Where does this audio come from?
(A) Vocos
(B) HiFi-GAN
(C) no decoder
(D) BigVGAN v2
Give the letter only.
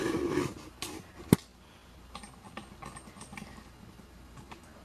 C